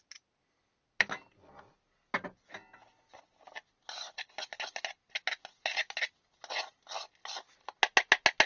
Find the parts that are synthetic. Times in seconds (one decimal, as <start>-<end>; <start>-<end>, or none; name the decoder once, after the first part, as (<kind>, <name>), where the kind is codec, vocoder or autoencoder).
none